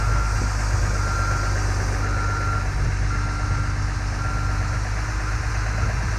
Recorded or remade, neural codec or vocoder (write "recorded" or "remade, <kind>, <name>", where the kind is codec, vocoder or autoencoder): recorded